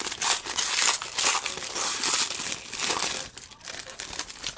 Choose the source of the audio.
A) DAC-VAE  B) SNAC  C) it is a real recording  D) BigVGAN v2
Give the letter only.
C